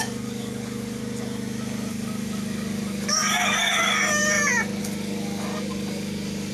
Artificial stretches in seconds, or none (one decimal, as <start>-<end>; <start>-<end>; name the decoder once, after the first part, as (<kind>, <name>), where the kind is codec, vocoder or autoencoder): 0.0-1.0 (codec, DAC); 1.9-4.2; 4.8-6.5